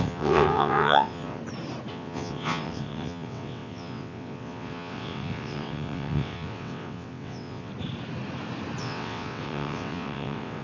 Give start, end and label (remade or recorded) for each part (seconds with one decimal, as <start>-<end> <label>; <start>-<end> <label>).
0.0-1.4 remade; 1.4-1.9 recorded; 1.9-7.7 remade; 7.7-8.8 recorded; 8.8-10.6 remade